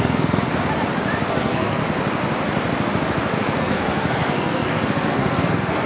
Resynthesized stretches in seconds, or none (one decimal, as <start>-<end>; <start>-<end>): 0.0-0.5; 1.3-1.8; 3.6-5.9